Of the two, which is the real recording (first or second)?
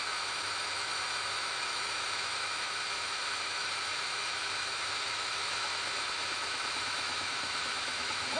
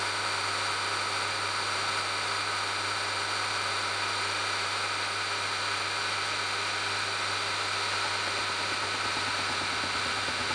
second